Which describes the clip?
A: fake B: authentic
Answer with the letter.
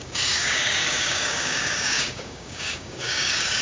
A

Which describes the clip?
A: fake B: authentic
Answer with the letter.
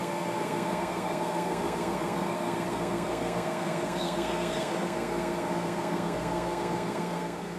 A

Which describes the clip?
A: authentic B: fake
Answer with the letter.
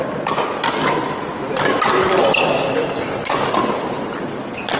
A